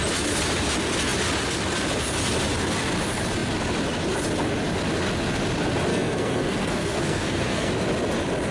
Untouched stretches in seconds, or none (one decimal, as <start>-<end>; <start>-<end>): 0.0-5.9; 7.7-8.5